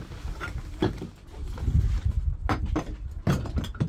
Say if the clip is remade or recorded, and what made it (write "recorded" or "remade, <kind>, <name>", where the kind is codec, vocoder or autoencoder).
recorded